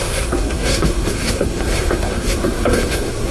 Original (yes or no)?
no